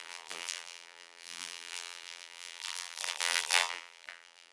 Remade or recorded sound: remade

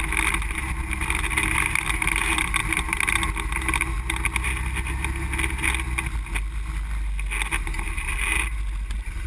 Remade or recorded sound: recorded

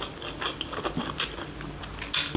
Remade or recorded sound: recorded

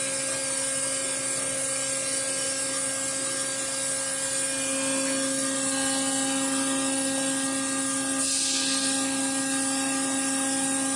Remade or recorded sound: recorded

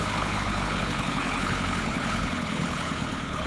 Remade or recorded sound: remade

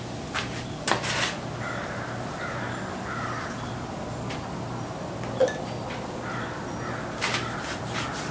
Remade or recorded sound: recorded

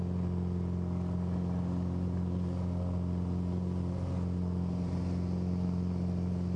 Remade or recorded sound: recorded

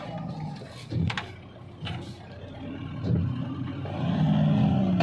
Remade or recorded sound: recorded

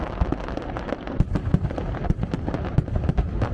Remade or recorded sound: recorded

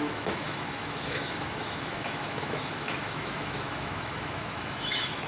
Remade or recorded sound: remade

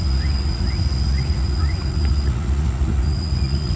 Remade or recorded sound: remade